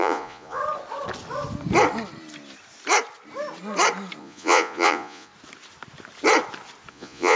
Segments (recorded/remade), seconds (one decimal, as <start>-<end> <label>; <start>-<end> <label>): 0.0-0.6 remade; 0.6-4.2 recorded; 4.2-5.3 remade; 5.3-6.9 recorded; 6.9-7.4 remade